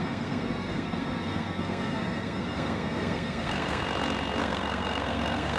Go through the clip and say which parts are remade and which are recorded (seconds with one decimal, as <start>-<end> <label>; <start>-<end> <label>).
0.0-3.8 remade; 3.8-4.4 recorded; 4.4-5.6 remade